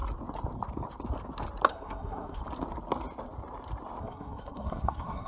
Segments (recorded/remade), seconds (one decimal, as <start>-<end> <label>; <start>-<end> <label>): 0.0-1.7 recorded; 1.7-2.4 remade; 2.4-4.0 recorded; 4.0-5.3 remade